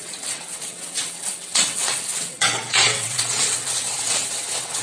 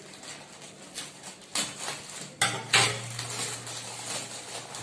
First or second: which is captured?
second